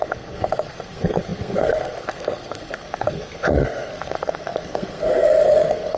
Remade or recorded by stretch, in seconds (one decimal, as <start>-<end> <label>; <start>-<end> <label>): 0.0-6.0 remade